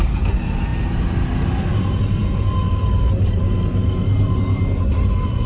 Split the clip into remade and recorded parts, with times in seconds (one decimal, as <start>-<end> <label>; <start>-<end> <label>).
0.0-5.5 recorded